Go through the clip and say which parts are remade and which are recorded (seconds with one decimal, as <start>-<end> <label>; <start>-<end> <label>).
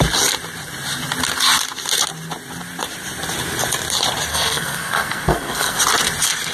0.0-4.3 recorded; 4.3-5.8 remade; 5.8-6.5 recorded